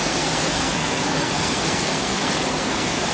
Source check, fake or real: fake